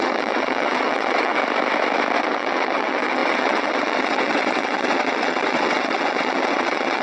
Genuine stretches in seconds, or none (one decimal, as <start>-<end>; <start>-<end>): 1.4-2.2